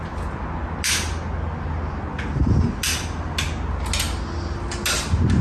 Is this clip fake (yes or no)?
no